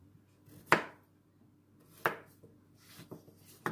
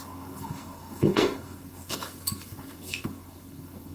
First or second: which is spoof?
second